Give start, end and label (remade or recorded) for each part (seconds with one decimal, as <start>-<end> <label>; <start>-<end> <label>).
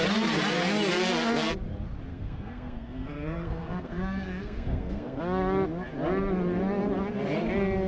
0.0-2.1 recorded; 2.1-5.2 remade; 5.2-7.9 recorded